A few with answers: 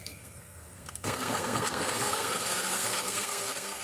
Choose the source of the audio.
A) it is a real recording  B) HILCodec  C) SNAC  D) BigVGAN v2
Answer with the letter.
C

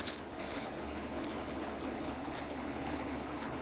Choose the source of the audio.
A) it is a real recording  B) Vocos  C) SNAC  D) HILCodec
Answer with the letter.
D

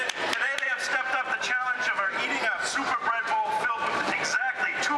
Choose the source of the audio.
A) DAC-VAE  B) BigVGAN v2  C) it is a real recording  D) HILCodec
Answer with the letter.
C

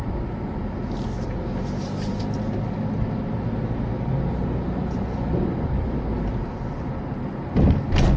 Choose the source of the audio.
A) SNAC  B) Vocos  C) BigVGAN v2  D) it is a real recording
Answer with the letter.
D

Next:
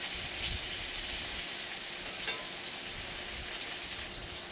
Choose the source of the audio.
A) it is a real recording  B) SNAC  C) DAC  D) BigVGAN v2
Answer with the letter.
A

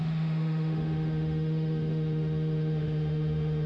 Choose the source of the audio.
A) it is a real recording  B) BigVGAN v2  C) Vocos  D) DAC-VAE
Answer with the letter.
D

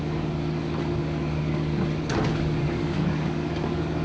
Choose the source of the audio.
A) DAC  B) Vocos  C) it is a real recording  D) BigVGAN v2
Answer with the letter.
A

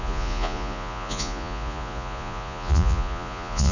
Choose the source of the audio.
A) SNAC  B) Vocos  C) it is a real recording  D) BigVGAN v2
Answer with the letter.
B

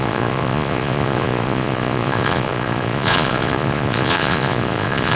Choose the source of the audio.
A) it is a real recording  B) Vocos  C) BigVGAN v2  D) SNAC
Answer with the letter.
B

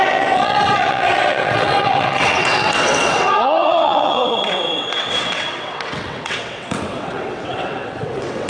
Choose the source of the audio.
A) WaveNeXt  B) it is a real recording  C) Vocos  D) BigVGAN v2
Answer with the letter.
A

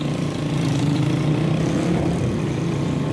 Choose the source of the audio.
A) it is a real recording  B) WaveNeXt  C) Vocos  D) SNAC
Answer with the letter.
A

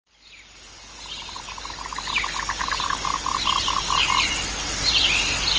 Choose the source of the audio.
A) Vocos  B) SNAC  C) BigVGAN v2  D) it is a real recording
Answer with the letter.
D